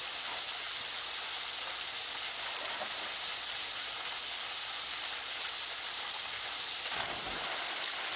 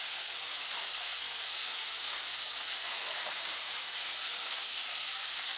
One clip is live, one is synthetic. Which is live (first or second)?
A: first